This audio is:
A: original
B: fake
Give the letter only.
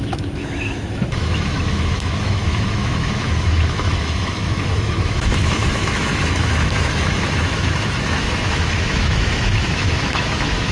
B